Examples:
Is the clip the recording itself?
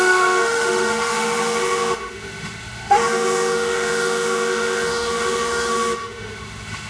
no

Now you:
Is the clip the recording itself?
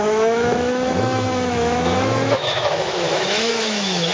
no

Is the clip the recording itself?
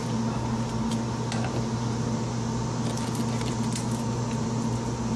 yes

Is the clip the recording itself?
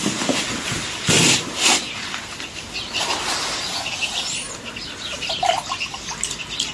yes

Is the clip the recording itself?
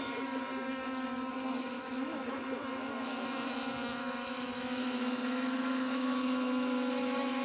no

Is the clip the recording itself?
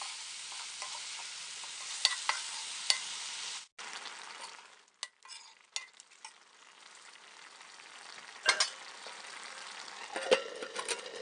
yes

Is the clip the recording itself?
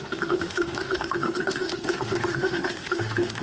no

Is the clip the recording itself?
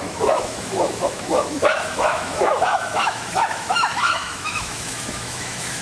no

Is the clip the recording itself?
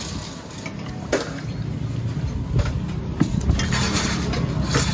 yes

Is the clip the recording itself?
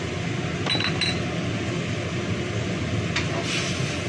yes